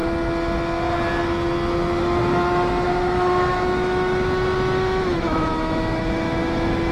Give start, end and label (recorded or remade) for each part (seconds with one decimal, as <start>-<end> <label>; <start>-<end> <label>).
0.0-2.0 recorded; 2.0-6.9 remade